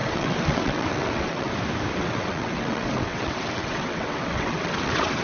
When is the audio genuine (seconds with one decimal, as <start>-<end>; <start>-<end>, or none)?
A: 1.5-2.0